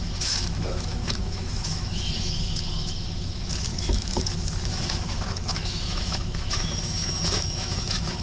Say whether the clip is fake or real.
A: fake